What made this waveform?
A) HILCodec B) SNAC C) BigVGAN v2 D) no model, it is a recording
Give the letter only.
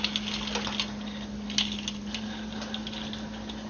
D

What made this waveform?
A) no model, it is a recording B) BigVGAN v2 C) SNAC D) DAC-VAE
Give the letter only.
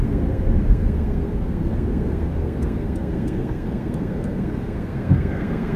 C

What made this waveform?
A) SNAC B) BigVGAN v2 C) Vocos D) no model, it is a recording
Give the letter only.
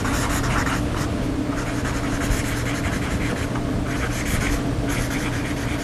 D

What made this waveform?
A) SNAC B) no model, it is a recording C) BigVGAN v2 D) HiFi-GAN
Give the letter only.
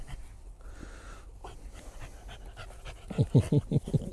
B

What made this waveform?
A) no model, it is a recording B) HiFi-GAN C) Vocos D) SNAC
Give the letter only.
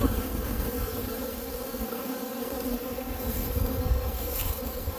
D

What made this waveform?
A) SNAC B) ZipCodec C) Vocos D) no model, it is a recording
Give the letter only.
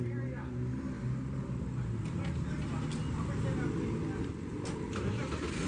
D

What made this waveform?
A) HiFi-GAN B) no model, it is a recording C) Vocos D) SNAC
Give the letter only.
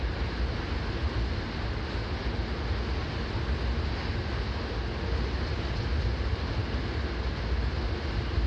B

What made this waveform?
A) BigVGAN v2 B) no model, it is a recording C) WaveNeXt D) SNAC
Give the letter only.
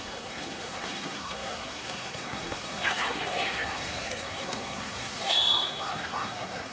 D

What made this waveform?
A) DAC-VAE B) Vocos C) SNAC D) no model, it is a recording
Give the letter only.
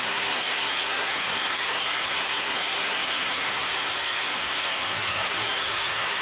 C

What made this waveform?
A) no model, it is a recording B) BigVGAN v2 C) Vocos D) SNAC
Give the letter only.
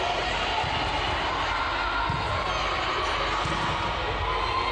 A